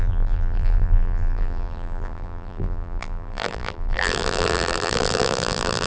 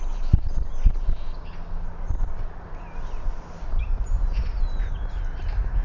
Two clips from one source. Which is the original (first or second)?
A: second